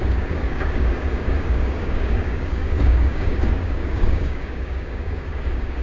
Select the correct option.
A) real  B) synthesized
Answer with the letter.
B